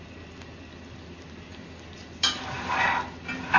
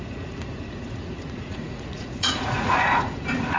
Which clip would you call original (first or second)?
first